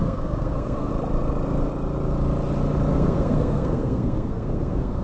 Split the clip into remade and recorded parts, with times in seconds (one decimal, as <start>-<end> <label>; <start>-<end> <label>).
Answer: 0.0-0.9 remade; 0.9-2.9 recorded; 2.9-5.0 remade